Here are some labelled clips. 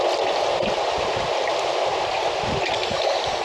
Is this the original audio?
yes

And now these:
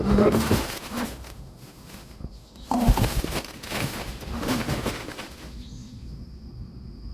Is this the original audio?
no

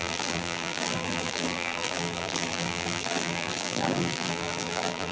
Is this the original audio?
no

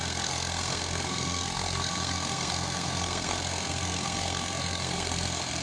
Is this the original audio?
no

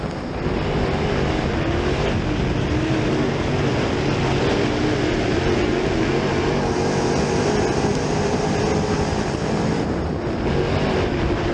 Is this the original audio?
yes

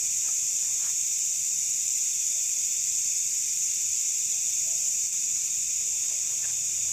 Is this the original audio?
no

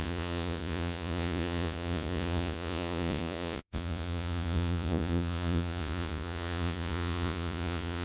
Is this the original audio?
no